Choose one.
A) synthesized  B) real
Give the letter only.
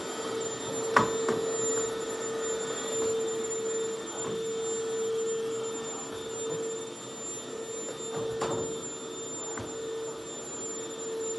B